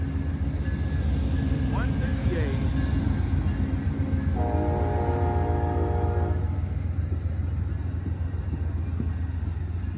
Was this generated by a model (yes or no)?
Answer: no